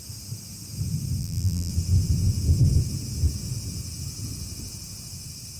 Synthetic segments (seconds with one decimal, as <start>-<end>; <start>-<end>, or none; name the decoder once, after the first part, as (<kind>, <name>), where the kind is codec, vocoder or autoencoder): 1.2-1.7 (vocoder, BigVGAN v2)